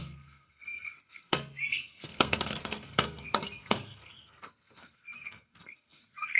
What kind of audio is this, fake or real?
fake